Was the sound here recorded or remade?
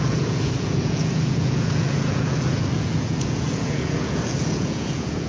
remade